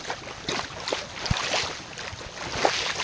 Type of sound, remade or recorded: recorded